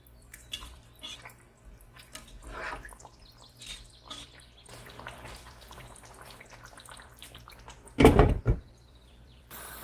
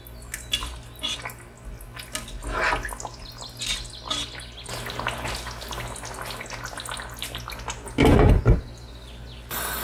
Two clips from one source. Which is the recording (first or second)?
second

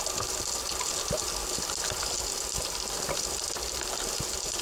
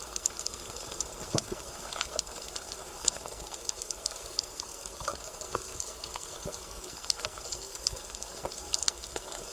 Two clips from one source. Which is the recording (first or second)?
first